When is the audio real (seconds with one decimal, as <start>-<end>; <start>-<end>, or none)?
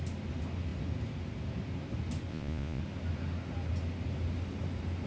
0.0-2.3; 2.8-5.1